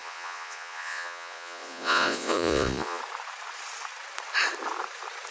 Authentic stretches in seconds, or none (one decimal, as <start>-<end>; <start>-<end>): 3.0-5.3